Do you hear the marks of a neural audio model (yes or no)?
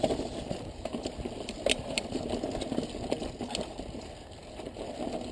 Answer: no